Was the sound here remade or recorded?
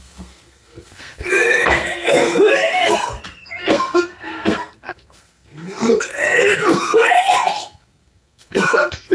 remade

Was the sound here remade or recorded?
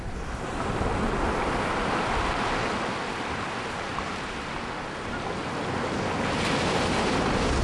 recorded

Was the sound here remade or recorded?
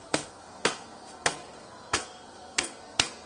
remade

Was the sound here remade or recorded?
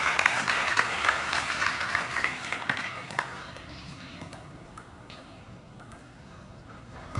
remade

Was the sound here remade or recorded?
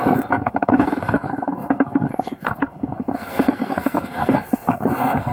remade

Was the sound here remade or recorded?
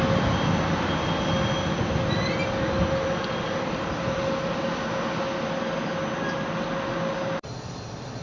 recorded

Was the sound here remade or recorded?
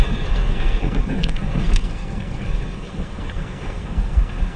remade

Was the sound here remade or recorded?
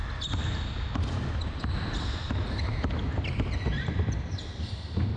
recorded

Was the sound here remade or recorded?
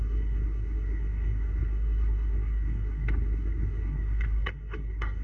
remade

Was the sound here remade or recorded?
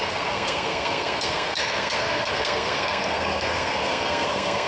remade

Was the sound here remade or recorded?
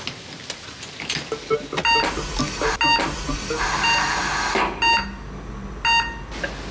recorded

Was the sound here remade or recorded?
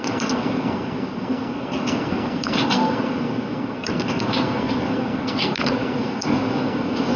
remade